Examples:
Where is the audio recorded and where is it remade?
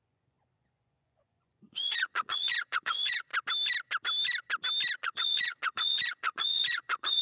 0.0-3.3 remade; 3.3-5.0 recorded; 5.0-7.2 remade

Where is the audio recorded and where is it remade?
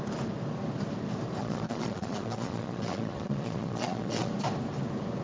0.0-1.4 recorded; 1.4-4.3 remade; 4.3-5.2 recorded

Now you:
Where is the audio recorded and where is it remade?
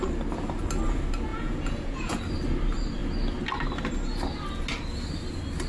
0.0-1.3 recorded; 1.3-2.2 remade; 2.2-5.7 recorded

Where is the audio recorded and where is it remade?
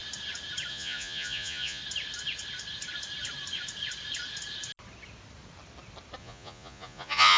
0.0-0.7 recorded; 0.7-1.8 remade; 1.8-6.2 recorded; 6.2-7.4 remade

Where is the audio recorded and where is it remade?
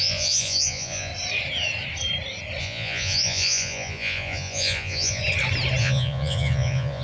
0.0-1.1 remade; 1.1-2.6 recorded; 2.6-5.2 remade; 5.2-5.8 recorded; 5.8-7.0 remade